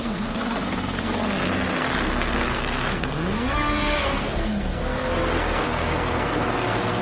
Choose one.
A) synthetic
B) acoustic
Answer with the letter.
A